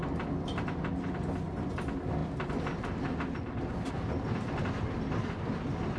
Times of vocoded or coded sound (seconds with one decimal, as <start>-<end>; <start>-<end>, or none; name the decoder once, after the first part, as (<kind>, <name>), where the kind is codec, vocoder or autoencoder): none